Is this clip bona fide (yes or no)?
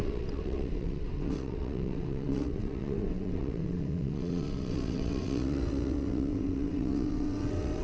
no